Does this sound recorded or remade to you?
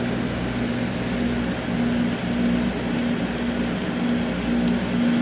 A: recorded